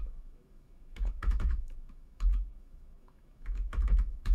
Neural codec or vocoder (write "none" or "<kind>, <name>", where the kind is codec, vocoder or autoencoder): autoencoder, DAC-VAE